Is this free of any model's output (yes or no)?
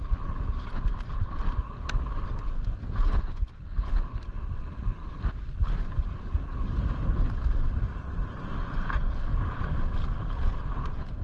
yes